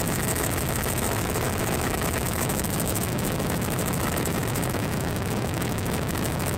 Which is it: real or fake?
fake